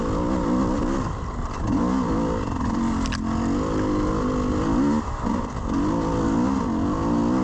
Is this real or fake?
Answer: real